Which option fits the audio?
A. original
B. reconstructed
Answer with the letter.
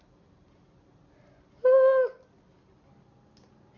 A